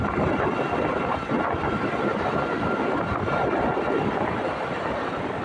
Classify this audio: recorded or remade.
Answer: recorded